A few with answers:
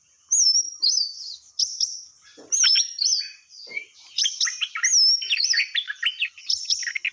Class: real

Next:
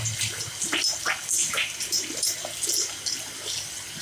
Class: real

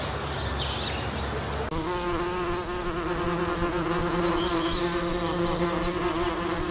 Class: real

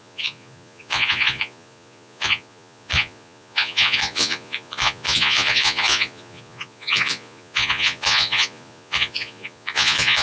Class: fake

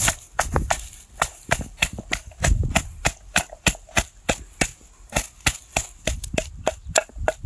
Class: real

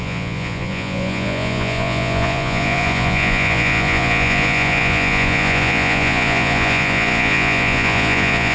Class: fake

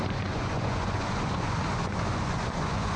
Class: fake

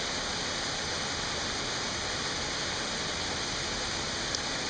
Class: real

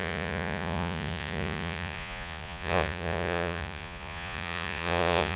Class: fake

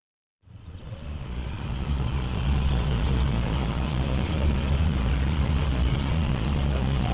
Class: fake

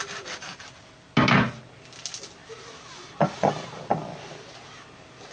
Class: real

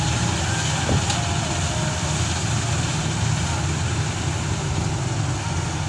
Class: real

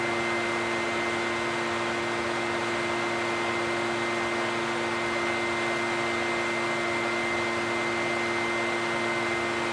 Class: real